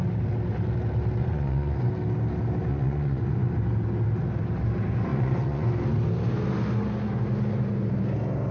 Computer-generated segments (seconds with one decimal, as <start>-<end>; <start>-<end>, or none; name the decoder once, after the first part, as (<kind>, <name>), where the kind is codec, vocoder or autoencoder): 1.2-1.9 (vocoder, Vocos); 2.7-3.5; 5.1-5.7